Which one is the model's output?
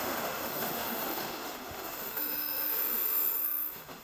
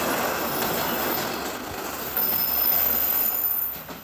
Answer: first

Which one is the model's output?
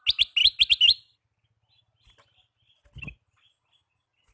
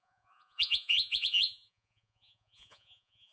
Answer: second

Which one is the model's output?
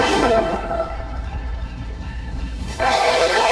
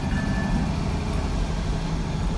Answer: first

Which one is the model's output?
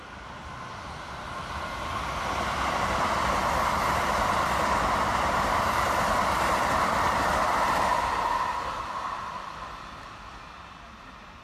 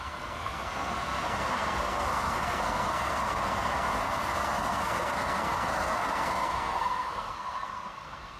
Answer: second